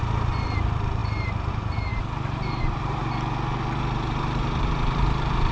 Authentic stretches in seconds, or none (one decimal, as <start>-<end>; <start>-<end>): 3.0-3.9